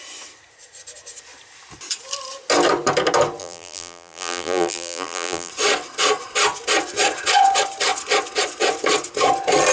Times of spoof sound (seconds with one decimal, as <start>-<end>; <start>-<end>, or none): 3.4-5.5